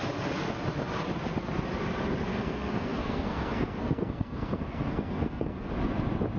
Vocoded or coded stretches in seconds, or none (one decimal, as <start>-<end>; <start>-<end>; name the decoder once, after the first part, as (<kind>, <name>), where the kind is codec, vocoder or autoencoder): 2.3-5.7 (codec, SNAC)